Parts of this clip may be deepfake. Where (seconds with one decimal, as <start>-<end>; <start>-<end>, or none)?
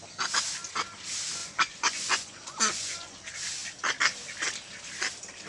1.4-3.2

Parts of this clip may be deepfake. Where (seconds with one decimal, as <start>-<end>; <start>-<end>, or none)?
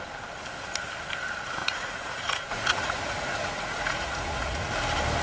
1.6-4.7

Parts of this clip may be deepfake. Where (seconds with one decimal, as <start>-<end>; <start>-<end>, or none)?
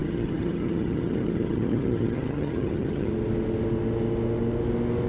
0.0-3.1